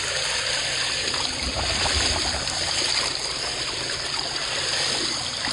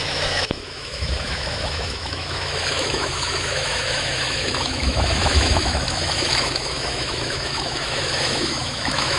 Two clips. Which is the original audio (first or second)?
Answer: first